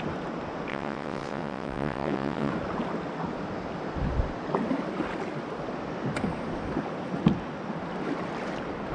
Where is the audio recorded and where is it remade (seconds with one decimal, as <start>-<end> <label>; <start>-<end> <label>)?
0.0-0.7 recorded; 0.7-2.5 remade; 2.5-8.9 recorded